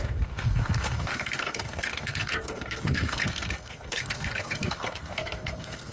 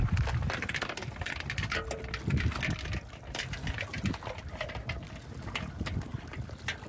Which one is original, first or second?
second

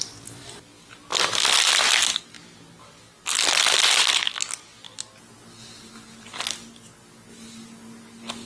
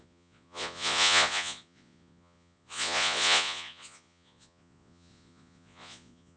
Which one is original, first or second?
first